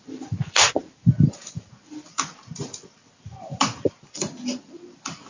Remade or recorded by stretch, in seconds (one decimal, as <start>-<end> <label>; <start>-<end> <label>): 0.0-0.8 remade; 0.8-4.0 recorded; 4.0-5.3 remade